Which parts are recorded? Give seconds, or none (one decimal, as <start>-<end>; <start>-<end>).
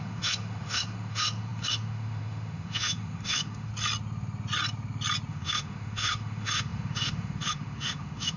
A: 3.7-5.3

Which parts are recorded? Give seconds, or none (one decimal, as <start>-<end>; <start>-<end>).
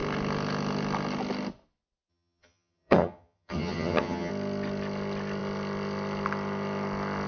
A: 0.0-2.1; 4.3-7.3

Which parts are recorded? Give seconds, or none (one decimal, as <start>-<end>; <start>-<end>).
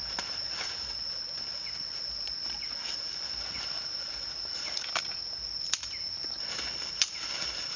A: 0.0-7.8